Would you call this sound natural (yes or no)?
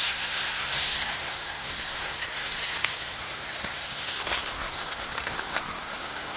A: no